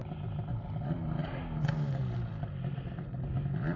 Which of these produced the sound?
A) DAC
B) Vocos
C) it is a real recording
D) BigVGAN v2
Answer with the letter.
C